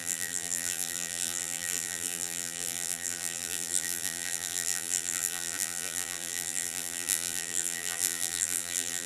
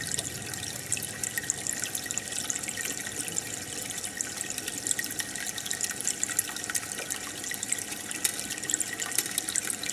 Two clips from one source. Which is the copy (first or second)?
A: first